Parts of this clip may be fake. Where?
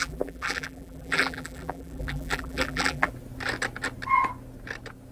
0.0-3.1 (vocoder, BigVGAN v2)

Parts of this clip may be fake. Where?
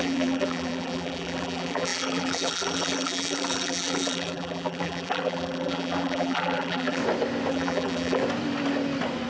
0.0-7.0 (vocoder, BigVGAN v2); 7.5-8.2